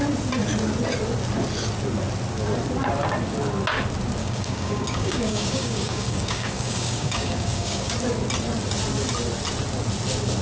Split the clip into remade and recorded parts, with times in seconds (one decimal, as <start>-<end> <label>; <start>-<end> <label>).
0.0-4.2 recorded; 4.2-7.9 remade; 7.9-10.4 recorded

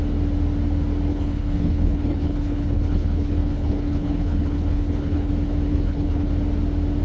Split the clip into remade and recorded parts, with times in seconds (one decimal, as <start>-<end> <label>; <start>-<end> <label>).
0.0-1.1 recorded; 1.1-5.3 remade; 5.3-5.7 recorded; 5.7-6.3 remade; 6.3-7.0 recorded

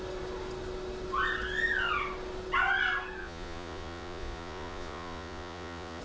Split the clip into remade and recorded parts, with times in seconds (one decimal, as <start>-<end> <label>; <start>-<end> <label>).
0.0-3.2 recorded; 3.2-6.0 remade

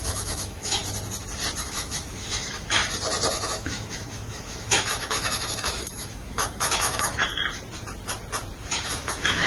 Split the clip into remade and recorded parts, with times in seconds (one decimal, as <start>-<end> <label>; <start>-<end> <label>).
0.0-0.8 remade; 0.8-1.6 recorded; 1.6-2.8 remade; 2.8-3.3 recorded; 3.3-7.3 remade; 7.3-8.7 recorded; 8.7-9.5 remade

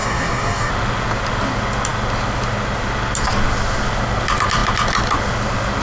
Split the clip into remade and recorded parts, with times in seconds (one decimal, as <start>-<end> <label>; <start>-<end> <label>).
0.0-0.7 remade; 0.7-5.8 recorded

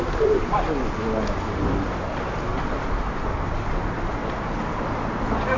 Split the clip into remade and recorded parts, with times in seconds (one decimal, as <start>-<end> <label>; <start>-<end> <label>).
0.0-2.5 recorded; 2.5-3.5 remade; 3.5-5.6 recorded